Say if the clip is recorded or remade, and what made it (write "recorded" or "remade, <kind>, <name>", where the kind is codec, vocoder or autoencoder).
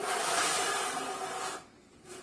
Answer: recorded